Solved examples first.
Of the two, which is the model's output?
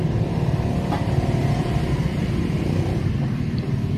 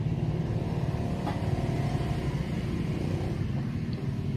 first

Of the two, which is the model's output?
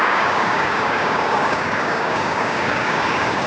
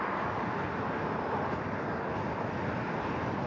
first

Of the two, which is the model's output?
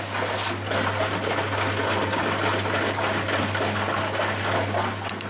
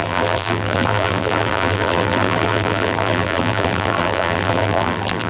second